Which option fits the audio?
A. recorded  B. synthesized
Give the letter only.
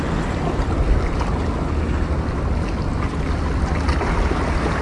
A